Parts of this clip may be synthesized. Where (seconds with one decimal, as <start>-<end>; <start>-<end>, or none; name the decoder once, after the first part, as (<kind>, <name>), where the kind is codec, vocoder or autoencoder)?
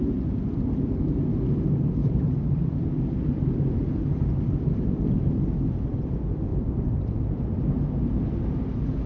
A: 2.0-5.3 (vocoder, BigVGAN v2); 6.5-7.4